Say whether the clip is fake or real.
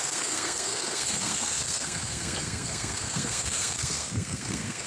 fake